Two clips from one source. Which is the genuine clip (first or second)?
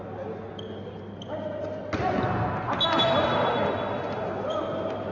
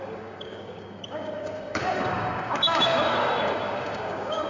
first